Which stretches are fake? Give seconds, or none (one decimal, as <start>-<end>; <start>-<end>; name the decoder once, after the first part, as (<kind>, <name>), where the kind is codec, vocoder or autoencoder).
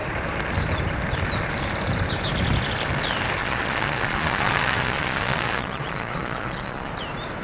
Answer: 3.4-6.9 (vocoder, Vocos)